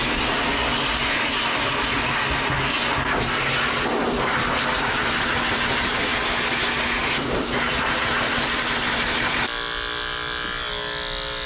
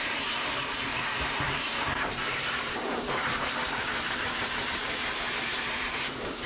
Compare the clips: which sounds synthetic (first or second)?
second